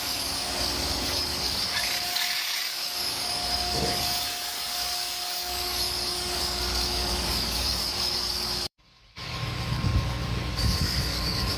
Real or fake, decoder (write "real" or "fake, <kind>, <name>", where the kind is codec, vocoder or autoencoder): fake, codec, DAC